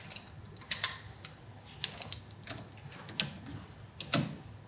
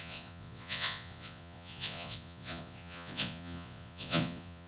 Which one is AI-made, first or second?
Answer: second